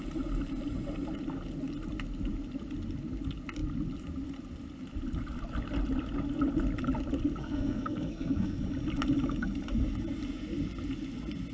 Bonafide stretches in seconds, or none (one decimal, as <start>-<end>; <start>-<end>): 0.0-7.4; 8.6-11.5